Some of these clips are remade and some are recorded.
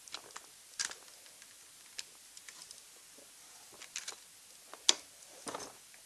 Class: recorded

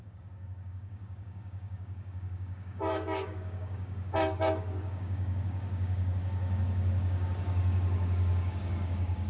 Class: remade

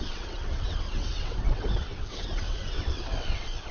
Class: remade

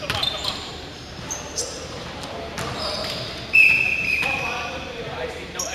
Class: remade